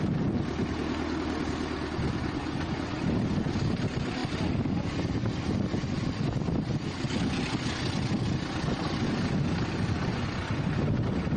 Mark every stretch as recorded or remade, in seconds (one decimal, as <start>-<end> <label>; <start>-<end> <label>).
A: 0.0-2.4 recorded; 2.4-3.0 remade; 3.0-10.1 recorded; 10.1-10.9 remade; 10.9-11.4 recorded